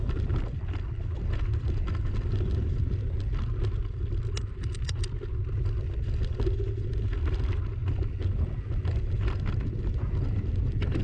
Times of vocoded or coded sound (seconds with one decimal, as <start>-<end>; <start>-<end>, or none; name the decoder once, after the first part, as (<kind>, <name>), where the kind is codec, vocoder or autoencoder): none